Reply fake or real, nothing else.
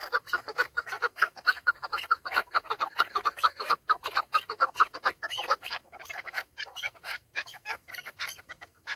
fake